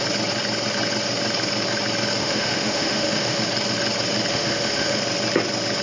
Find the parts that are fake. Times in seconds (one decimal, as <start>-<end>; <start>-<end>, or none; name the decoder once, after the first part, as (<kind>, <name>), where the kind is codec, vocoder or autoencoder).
2.2-3.4 (autoencoder, DAC-VAE); 4.3-5.0